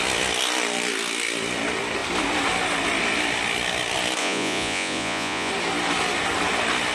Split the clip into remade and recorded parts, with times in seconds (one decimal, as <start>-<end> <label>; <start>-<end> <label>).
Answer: 0.0-4.2 recorded; 4.2-5.5 remade; 5.5-6.9 recorded